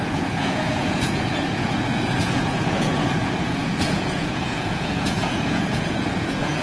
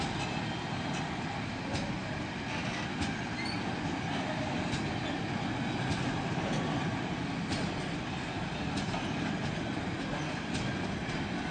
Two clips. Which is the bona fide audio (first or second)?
second